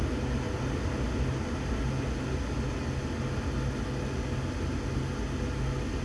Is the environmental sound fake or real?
real